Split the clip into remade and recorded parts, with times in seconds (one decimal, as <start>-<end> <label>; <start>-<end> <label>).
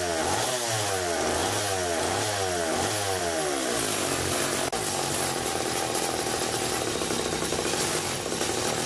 0.0-8.9 recorded